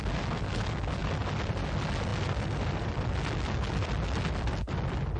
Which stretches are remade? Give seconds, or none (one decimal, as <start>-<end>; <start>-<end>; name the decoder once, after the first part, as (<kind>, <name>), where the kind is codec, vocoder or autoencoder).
2.1-3.1 (vocoder, BigVGAN v2)